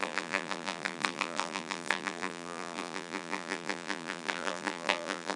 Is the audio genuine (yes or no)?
no